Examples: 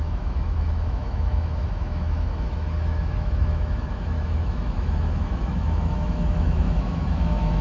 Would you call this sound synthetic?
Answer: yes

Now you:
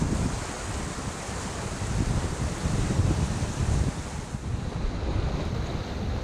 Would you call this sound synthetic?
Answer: no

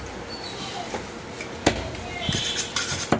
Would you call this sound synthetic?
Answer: no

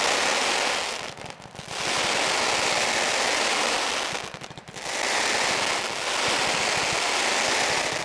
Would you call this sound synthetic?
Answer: no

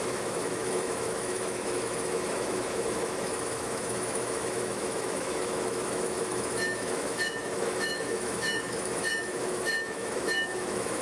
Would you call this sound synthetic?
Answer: yes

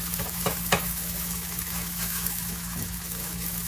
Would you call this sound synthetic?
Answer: yes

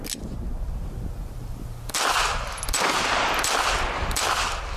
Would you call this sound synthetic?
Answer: no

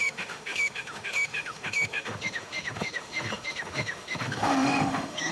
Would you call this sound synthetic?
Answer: yes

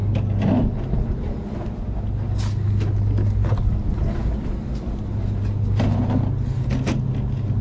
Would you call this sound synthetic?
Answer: no